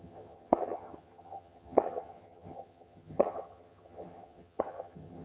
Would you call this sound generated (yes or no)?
yes